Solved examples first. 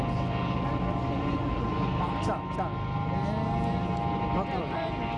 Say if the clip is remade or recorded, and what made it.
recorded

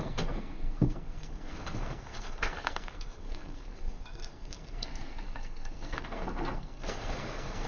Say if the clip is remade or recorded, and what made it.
remade, codec, SNAC